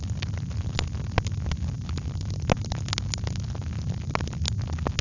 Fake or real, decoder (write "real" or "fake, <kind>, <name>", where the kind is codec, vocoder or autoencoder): real